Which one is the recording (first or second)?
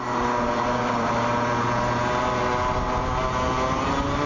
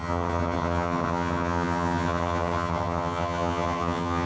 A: first